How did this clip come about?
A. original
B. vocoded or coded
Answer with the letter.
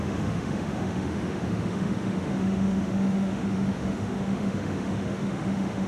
B